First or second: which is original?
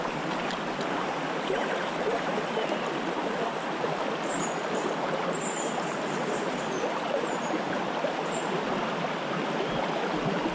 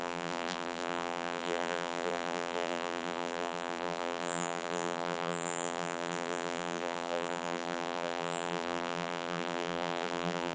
first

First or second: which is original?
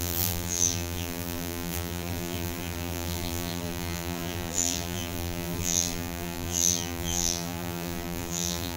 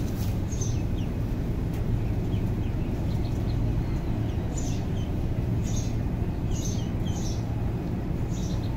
second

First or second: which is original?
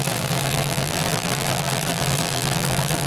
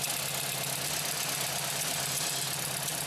second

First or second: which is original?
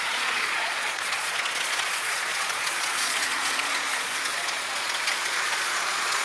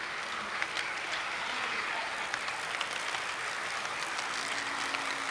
second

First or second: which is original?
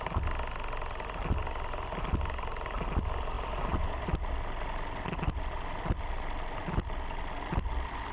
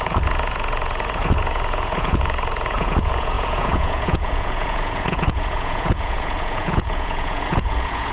first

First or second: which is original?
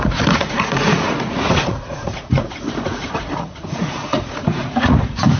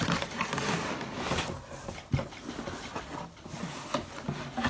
second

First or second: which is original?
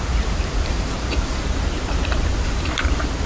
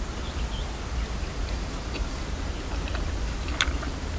second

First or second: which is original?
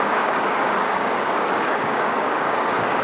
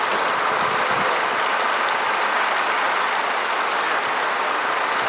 second